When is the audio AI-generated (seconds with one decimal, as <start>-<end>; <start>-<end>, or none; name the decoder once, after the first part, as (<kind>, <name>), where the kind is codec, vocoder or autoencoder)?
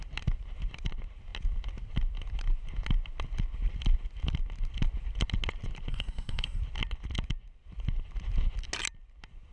5.9-6.6 (codec, SNAC)